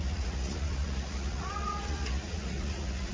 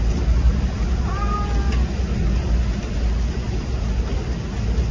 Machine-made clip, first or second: first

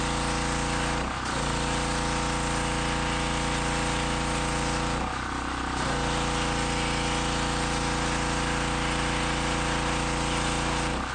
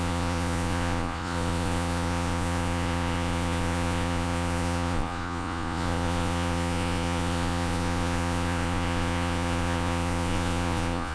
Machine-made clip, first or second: second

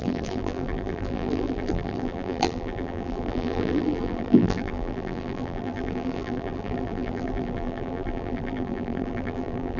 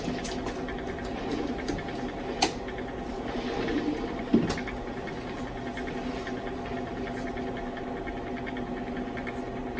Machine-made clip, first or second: first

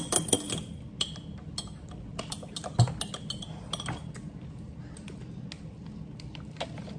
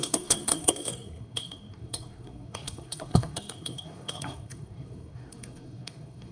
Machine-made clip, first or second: second